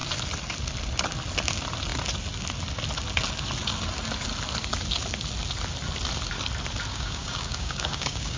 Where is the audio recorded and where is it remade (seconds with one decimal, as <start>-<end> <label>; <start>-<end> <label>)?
0.0-6.9 recorded; 6.9-8.4 remade